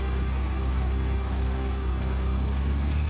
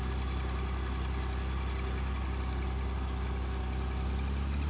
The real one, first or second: second